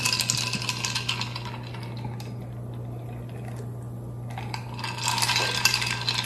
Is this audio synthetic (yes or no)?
no